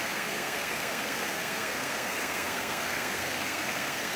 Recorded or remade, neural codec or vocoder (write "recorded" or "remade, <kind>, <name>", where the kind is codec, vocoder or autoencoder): remade, codec, SNAC